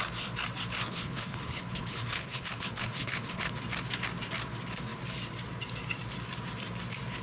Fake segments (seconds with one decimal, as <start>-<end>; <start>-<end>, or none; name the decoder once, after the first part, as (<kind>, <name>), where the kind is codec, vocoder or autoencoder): 0.8-3.5 (codec, HILCodec)